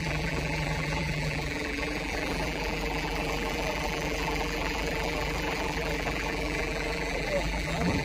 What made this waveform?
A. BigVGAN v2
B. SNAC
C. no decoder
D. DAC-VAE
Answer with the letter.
A